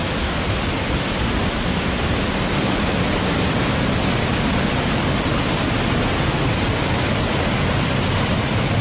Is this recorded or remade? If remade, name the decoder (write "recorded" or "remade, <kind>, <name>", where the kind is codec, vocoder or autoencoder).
recorded